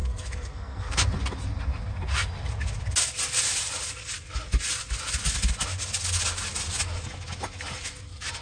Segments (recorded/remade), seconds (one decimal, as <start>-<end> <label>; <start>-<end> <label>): 0.0-1.1 remade; 1.1-8.4 recorded